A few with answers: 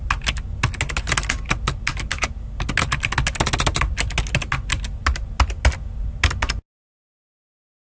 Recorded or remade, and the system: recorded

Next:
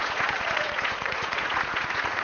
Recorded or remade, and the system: remade, vocoder, Vocos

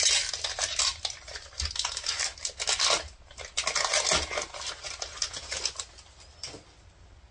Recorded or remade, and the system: recorded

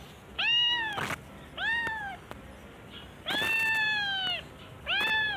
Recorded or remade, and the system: recorded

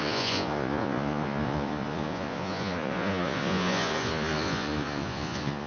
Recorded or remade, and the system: remade, vocoder, Vocos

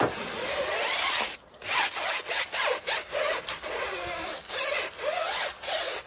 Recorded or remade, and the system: recorded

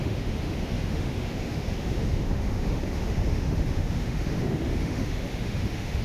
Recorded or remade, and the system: remade, autoencoder, DAC-VAE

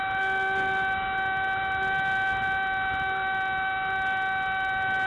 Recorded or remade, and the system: recorded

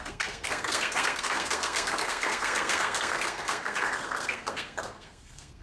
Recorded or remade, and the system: remade, codec, SNAC